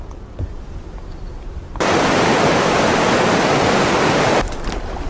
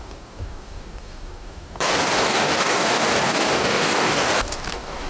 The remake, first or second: second